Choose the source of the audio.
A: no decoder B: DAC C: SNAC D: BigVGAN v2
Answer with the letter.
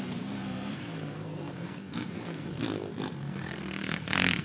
C